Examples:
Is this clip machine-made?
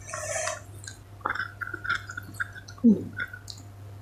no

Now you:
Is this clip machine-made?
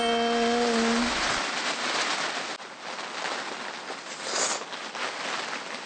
no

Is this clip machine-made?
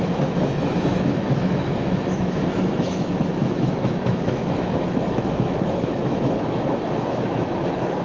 yes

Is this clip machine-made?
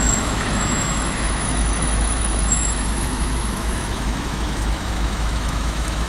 yes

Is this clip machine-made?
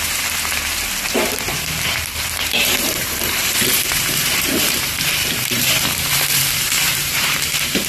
yes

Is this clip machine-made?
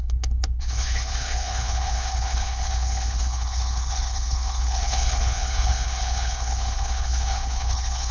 yes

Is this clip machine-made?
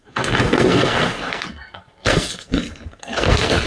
yes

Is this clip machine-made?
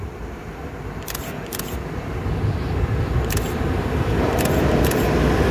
no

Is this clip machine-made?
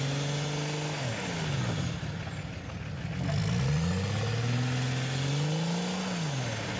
no